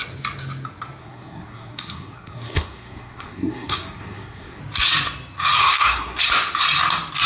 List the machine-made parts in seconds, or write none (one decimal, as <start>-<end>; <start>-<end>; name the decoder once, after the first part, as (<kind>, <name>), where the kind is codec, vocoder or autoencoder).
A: 1.0-4.6 (codec, SNAC); 5.6-6.2